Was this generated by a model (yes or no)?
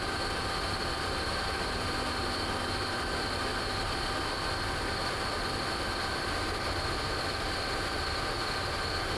no